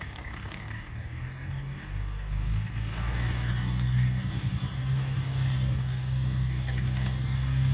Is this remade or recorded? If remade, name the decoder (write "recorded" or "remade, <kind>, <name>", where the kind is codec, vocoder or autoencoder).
remade, codec, DAC